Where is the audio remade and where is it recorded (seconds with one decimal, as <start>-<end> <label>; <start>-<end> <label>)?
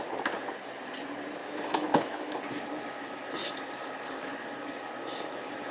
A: 0.0-1.4 recorded; 1.4-2.4 remade; 2.4-5.7 recorded